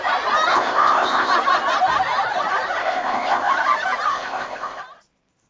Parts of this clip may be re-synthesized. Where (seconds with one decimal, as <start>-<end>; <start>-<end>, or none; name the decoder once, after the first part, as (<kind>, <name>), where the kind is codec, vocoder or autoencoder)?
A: 0.5-1.3 (codec, ZipCodec); 2.8-3.5; 4.1-4.8